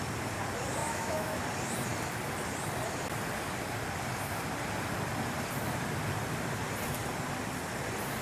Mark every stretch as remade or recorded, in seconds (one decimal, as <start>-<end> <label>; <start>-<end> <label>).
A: 0.0-0.8 recorded; 0.8-1.4 remade; 1.4-8.2 recorded